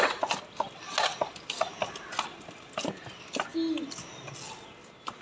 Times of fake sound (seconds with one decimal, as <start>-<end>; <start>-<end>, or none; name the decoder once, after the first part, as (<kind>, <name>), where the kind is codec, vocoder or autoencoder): none